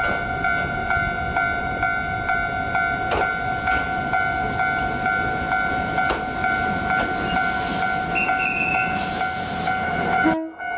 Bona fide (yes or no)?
yes